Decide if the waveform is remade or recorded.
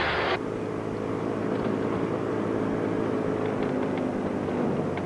recorded